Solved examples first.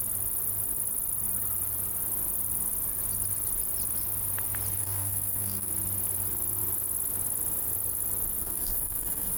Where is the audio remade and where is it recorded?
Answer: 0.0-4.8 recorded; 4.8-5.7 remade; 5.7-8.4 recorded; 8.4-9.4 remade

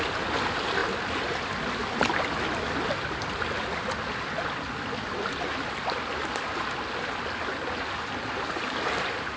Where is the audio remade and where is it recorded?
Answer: 0.0-9.4 recorded

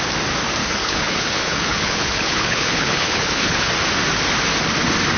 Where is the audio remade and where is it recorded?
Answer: 0.0-0.6 recorded; 0.6-3.7 remade; 3.7-5.2 recorded

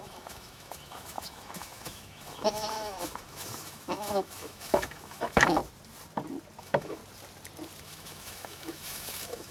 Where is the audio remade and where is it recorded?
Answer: 0.0-5.6 remade; 5.6-6.6 recorded; 6.6-7.0 remade; 7.0-7.8 recorded; 7.8-9.5 remade

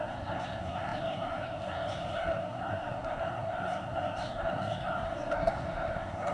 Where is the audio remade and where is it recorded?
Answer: 0.0-6.3 remade

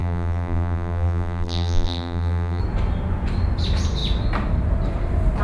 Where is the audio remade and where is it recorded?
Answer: 0.0-2.6 remade; 2.6-5.4 recorded